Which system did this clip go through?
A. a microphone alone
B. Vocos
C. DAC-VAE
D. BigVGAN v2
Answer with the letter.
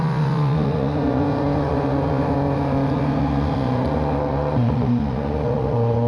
B